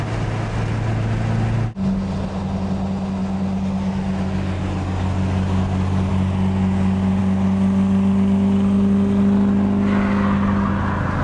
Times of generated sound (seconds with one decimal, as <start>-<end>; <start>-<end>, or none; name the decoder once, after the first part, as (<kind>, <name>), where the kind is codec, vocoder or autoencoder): none